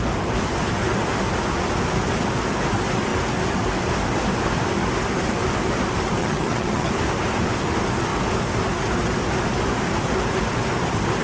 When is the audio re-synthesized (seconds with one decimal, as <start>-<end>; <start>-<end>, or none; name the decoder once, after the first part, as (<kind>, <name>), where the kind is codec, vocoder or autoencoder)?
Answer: 6.2-6.9 (vocoder, HiFi-GAN)